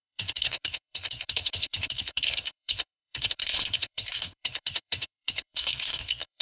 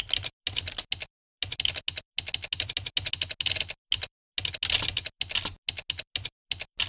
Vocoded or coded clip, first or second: first